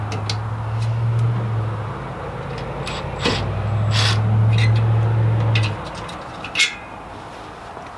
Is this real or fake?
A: real